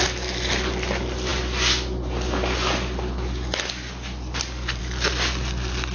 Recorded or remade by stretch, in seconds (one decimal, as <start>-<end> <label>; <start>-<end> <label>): 0.0-5.9 recorded